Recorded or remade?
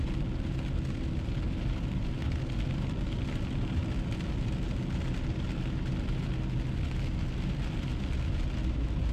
recorded